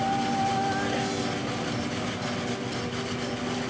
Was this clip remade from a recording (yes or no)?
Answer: no